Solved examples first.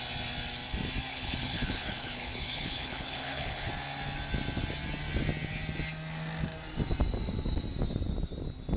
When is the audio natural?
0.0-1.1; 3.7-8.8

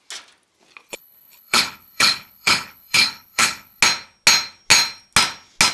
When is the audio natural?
0.0-0.9; 3.8-5.7